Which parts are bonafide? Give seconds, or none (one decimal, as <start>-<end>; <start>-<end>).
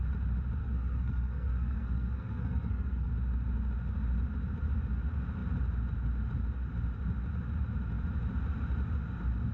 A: 0.0-0.6; 3.1-9.5